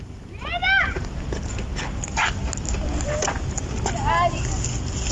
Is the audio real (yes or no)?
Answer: yes